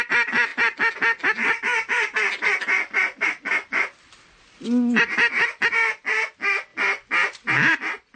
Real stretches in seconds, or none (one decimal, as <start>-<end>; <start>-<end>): 0.0-8.2